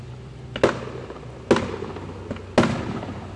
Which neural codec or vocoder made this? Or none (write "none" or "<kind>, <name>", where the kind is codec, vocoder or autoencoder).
none